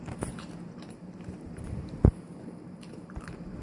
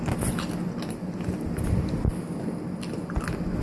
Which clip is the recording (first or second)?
second